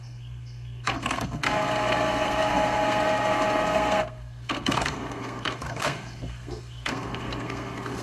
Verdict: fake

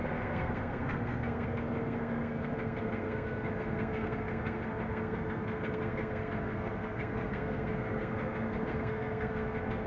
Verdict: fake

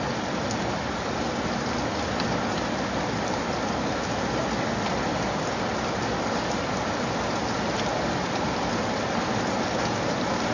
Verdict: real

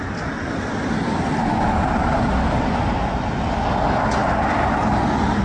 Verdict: real